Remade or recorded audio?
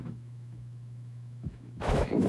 remade